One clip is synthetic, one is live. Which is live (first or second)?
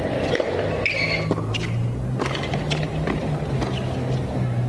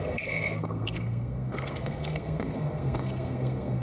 first